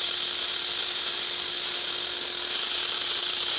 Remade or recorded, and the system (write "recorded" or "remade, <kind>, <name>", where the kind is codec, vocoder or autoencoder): remade, vocoder, BigVGAN v2